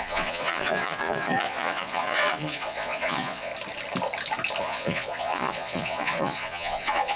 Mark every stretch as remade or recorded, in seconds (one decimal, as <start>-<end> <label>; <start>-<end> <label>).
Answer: 0.0-3.5 remade; 3.5-4.6 recorded; 4.6-7.2 remade